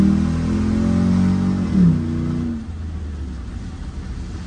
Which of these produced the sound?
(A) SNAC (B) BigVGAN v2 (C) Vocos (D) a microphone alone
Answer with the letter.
D